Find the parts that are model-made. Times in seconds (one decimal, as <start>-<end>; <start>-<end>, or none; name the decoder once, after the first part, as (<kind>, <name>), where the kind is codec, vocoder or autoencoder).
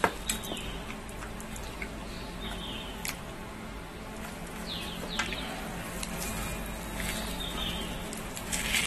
none